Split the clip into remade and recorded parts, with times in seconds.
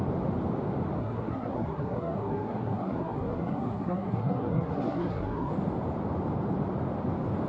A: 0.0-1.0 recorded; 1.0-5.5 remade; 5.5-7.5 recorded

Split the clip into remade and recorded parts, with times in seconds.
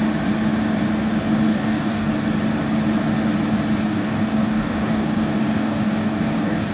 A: 0.0-1.5 recorded; 1.5-2.1 remade; 2.1-3.8 recorded; 3.8-6.7 remade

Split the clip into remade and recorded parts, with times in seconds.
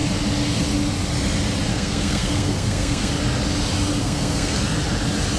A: 0.0-1.7 recorded; 1.7-3.1 remade; 3.1-4.0 recorded; 4.0-4.6 remade; 4.6-5.4 recorded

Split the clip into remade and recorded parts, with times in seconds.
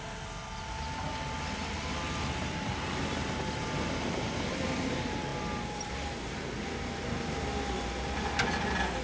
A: 0.0-9.0 recorded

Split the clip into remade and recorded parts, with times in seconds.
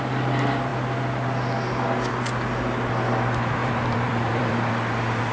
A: 0.0-3.6 recorded; 3.6-4.7 remade; 4.7-5.3 recorded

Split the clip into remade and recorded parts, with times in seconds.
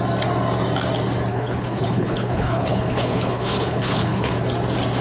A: 0.0-1.3 recorded; 1.3-4.3 remade; 4.3-5.0 recorded